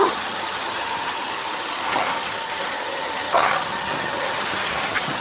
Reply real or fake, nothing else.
fake